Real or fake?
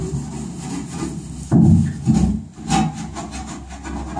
real